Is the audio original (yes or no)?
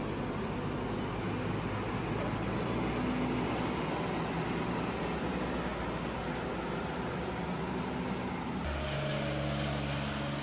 yes